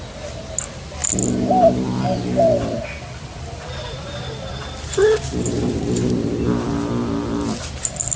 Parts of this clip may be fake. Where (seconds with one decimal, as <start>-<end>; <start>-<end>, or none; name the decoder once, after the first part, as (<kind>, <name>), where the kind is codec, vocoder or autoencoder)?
none